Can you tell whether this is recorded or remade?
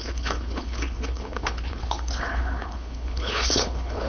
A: remade